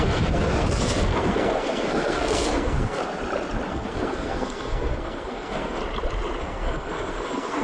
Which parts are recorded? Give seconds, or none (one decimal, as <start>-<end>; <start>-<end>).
3.0-3.7; 5.8-6.4